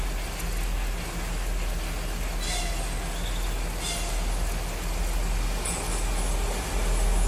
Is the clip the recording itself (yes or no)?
yes